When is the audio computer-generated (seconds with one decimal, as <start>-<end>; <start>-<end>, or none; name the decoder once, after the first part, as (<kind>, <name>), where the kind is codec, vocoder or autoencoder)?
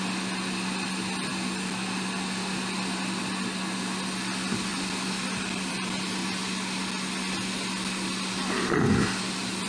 none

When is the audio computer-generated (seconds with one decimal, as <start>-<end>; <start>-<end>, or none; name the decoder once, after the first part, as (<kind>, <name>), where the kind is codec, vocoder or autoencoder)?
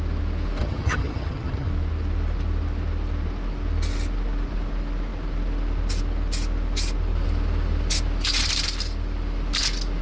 0.6-1.7 (vocoder, HiFi-GAN)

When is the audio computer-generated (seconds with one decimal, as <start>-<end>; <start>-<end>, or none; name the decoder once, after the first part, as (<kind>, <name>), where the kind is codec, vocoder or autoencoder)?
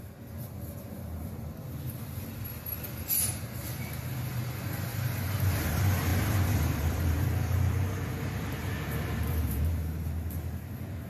3.3-4.3 (vocoder, BigVGAN v2); 4.9-5.6; 6.1-9.7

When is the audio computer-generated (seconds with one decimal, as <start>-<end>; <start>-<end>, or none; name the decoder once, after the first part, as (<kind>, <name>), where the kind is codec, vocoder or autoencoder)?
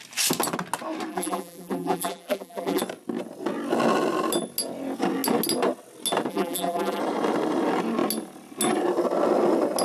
1.1-2.8 (vocoder, BigVGAN v2); 6.3-7.0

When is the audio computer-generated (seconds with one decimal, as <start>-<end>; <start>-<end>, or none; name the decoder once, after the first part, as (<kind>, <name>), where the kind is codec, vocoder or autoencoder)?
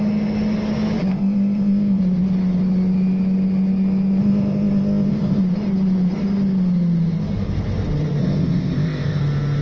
1.1-2.0 (codec, ZipCodec); 4.2-5.4; 8.2-9.2